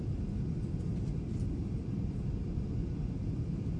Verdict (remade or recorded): recorded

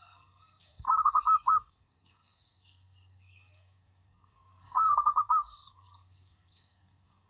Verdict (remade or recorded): remade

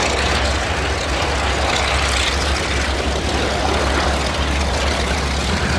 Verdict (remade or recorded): recorded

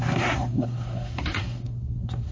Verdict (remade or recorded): remade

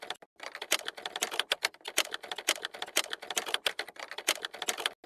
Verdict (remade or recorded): recorded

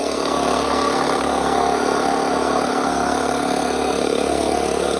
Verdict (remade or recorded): remade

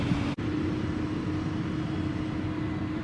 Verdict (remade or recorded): recorded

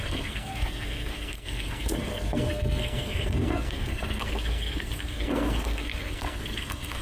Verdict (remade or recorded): remade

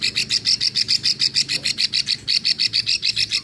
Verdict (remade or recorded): recorded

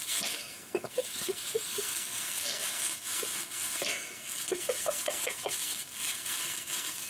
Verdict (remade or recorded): remade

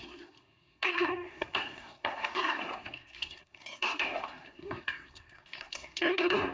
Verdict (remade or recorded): remade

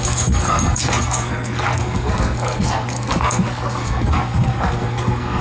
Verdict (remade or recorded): remade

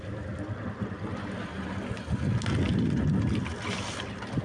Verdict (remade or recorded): recorded